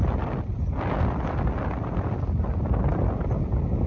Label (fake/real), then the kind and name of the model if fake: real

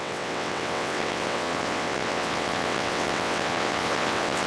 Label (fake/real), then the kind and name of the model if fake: fake, vocoder, WaveNeXt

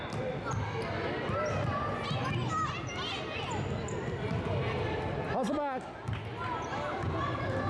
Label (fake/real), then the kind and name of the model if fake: real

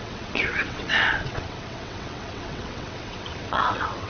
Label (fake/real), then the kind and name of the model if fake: fake, vocoder, WaveNeXt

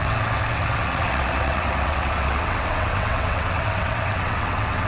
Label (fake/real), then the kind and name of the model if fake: fake, vocoder, WaveNeXt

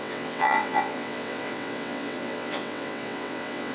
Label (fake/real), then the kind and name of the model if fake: fake, vocoder, WaveNeXt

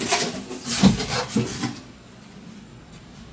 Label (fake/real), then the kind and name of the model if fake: real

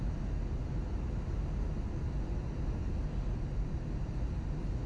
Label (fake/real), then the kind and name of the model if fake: real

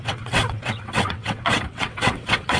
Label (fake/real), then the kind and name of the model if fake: fake, vocoder, WaveNeXt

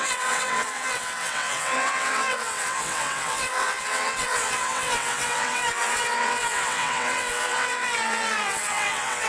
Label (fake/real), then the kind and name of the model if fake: fake, vocoder, WaveNeXt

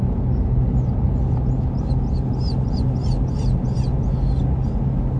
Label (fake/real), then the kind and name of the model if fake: real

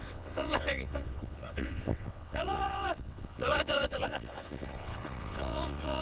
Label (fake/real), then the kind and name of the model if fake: fake, vocoder, WaveNeXt